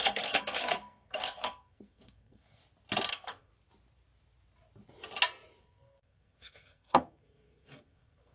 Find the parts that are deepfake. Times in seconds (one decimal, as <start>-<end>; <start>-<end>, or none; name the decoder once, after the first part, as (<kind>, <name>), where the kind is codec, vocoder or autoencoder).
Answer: 0.0-2.6 (codec, SNAC); 3.1-3.5; 5.6-8.3